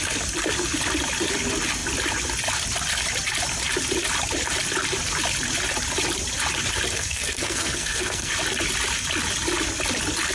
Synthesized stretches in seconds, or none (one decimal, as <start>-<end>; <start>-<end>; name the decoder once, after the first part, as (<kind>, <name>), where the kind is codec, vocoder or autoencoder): 6.9-8.3 (codec, SNAC)